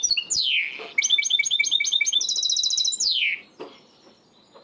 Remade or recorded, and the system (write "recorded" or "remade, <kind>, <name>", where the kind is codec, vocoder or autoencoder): recorded